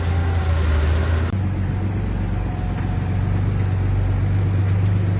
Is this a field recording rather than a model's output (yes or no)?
yes